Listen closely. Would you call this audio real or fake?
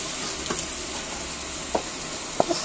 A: real